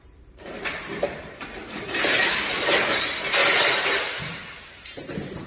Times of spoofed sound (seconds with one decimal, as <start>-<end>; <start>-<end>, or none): 0.0-3.4; 4.0-5.5